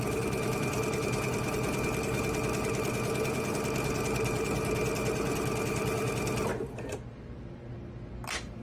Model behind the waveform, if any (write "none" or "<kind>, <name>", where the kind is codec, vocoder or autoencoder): none